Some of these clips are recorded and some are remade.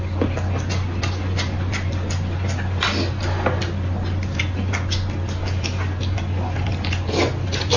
recorded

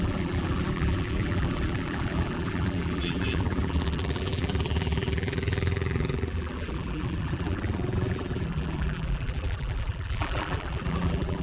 remade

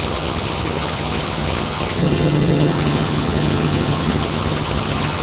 remade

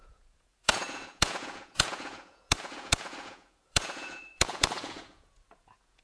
remade